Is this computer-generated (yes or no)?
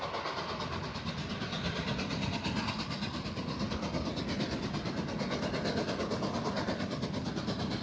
no